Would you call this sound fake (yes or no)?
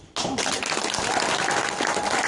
no